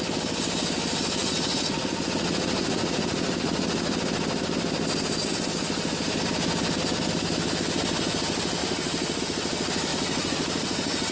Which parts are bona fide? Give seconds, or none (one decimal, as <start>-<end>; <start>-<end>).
0.0-1.2; 4.0-8.6; 9.2-9.9